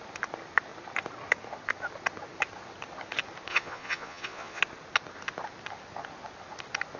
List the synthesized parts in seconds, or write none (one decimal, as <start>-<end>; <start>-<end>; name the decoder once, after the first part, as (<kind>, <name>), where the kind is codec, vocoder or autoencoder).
3.5-4.6 (vocoder, Vocos)